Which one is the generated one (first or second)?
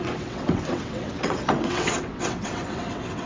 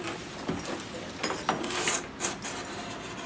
first